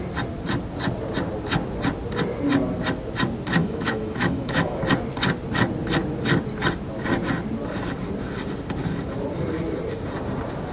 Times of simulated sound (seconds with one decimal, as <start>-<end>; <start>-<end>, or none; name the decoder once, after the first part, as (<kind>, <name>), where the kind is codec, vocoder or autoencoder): 3.6-4.8 (autoencoder, DAC-VAE)